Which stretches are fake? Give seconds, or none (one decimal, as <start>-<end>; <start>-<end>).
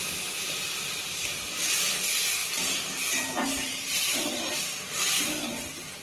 2.4-5.0